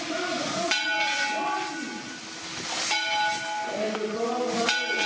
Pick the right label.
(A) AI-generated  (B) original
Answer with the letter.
B